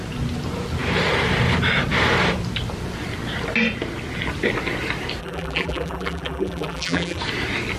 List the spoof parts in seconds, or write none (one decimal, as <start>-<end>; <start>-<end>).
5.2-7.2